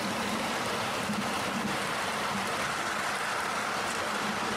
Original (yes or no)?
yes